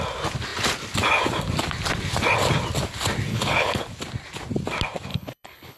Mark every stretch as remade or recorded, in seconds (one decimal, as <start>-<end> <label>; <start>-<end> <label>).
0.0-3.3 recorded; 3.3-3.8 remade; 3.8-5.1 recorded; 5.1-5.8 remade